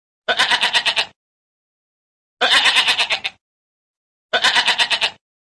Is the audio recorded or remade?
recorded